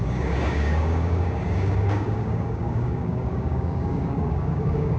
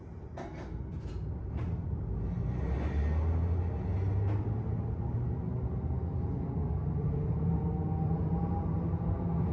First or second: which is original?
second